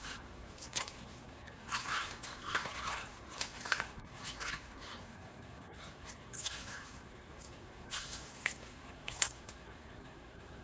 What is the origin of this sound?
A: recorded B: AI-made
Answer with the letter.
B